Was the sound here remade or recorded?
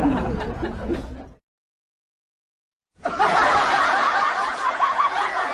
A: remade